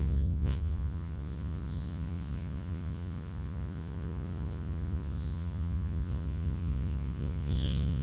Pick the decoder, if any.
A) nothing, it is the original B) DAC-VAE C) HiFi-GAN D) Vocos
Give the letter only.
D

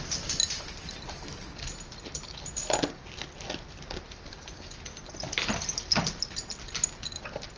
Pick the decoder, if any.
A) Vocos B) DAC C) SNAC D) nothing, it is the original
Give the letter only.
D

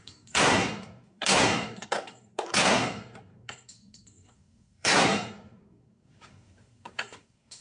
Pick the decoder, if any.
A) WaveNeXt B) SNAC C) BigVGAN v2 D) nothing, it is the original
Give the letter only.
B